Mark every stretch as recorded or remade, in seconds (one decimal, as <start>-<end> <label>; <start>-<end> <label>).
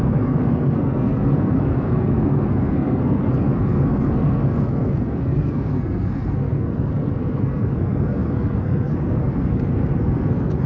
0.0-10.7 remade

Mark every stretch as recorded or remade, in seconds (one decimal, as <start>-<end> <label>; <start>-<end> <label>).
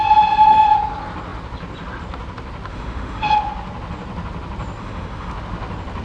0.0-2.7 recorded; 2.7-3.3 remade; 3.3-4.8 recorded; 4.8-5.3 remade; 5.3-6.0 recorded